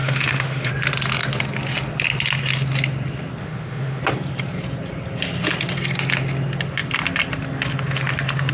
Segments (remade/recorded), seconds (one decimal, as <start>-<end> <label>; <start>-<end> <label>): 0.0-0.7 remade; 0.7-3.4 recorded; 3.4-4.0 remade; 4.0-8.5 recorded